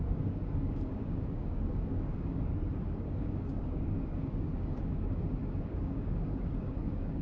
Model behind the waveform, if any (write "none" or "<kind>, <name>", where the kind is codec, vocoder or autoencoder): codec, DAC